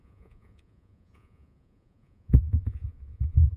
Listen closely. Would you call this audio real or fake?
fake